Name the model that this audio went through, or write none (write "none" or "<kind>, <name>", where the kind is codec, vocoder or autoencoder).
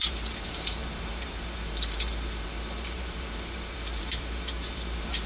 vocoder, BigVGAN v2